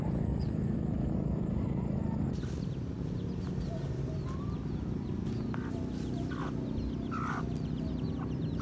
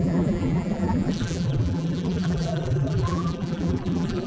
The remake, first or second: second